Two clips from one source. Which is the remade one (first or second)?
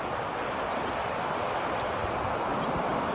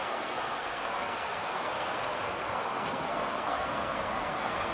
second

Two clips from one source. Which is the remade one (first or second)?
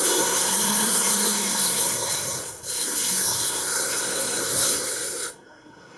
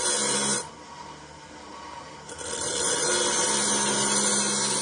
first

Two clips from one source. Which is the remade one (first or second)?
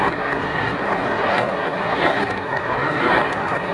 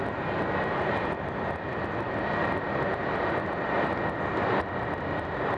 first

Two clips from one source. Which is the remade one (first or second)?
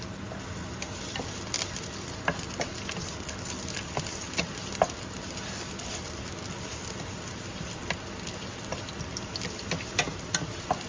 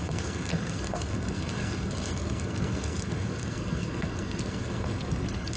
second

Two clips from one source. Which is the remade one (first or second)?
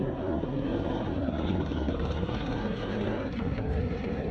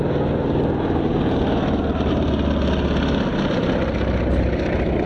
first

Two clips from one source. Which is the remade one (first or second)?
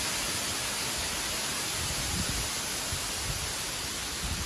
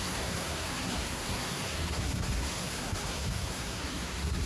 second